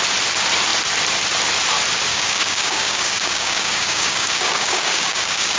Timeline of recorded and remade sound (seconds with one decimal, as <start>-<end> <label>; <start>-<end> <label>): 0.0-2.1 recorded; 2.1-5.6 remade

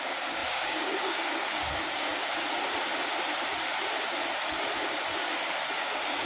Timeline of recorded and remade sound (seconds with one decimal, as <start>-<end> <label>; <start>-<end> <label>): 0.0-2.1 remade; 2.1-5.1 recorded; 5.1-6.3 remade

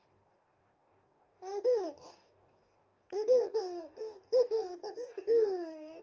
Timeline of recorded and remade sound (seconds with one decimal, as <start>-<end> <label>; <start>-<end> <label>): 0.0-6.0 remade

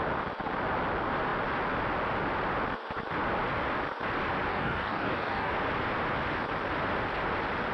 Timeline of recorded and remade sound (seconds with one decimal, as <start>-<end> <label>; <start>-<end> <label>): 0.0-4.5 recorded; 4.5-5.5 remade; 5.5-7.7 recorded

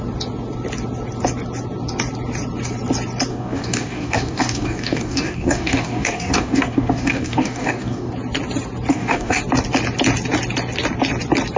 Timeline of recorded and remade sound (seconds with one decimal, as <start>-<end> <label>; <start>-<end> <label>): 0.0-3.3 recorded; 3.3-8.1 remade; 8.1-8.9 recorded; 8.9-9.4 remade; 9.4-11.6 recorded

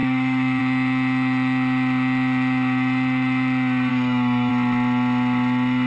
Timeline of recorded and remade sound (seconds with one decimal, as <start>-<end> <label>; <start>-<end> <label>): 0.0-0.6 remade; 0.6-3.9 recorded; 3.9-4.5 remade; 4.5-5.9 recorded

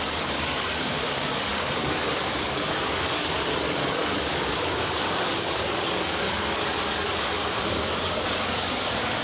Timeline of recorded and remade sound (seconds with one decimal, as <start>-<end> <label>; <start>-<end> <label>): 0.0-9.2 remade

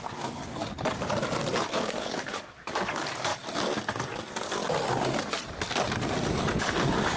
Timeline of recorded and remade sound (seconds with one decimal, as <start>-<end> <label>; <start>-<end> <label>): 0.0-0.6 remade; 0.6-1.6 recorded; 1.6-3.3 remade; 3.3-6.6 recorded; 6.6-7.2 remade